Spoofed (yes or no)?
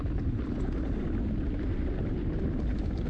no